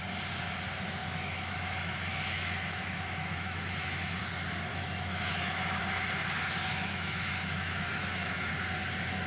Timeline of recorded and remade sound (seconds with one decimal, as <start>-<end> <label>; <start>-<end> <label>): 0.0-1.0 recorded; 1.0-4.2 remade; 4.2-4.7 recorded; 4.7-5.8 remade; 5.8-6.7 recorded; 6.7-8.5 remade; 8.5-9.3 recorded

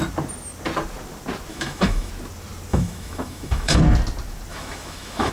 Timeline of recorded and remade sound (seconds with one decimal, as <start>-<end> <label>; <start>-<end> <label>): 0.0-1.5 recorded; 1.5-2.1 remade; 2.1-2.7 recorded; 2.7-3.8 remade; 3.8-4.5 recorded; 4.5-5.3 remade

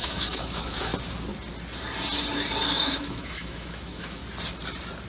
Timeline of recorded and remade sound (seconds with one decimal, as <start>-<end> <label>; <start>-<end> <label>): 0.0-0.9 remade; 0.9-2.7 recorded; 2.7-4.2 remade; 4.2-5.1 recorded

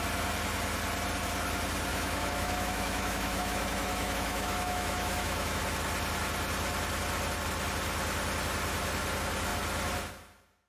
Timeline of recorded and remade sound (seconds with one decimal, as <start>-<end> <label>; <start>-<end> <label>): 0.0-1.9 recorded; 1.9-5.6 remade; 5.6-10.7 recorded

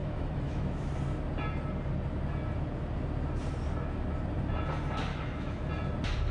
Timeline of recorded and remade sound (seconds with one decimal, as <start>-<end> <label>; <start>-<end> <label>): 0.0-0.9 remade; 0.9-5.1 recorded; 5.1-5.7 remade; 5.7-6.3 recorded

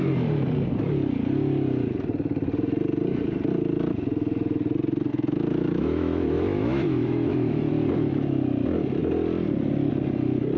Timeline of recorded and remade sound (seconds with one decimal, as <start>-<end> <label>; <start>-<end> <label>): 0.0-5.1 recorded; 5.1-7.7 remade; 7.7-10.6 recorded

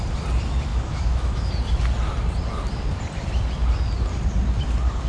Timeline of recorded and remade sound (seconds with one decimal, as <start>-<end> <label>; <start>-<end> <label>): 0.0-0.7 recorded; 0.7-1.5 remade; 1.5-5.1 recorded